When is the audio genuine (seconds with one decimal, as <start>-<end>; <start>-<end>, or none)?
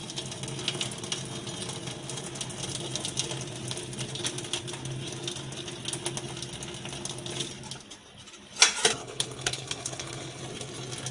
0.0-9.0; 10.4-11.1